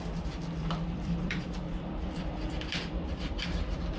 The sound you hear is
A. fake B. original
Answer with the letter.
A